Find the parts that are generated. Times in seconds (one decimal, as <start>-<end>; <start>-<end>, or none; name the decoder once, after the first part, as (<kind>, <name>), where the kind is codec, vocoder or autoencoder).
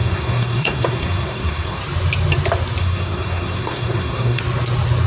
0.0-1.8 (codec, SNAC); 2.8-4.4